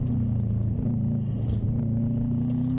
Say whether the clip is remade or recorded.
recorded